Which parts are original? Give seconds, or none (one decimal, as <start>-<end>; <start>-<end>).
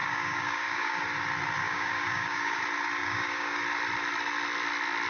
1.0-1.6; 2.6-3.0; 3.6-5.1